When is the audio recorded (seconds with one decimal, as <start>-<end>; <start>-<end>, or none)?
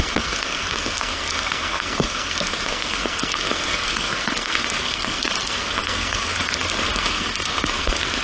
none